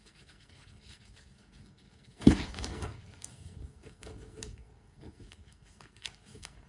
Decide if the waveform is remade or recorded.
remade